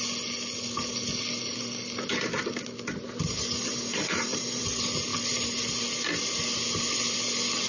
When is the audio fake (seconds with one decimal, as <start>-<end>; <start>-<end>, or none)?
4.0-4.6